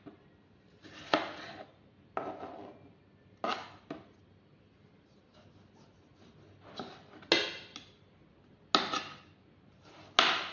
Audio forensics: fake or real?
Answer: real